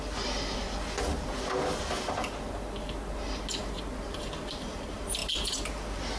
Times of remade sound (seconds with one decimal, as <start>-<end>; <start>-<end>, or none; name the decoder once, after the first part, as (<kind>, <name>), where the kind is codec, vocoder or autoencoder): none